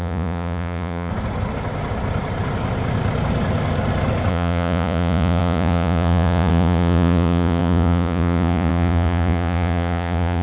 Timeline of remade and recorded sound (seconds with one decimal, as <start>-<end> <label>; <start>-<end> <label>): 0.0-1.1 remade; 1.1-4.3 recorded; 4.3-10.4 remade